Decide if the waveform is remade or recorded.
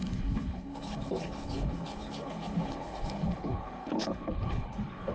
remade